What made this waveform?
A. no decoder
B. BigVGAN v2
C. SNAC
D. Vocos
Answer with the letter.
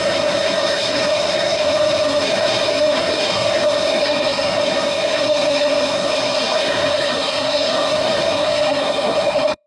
C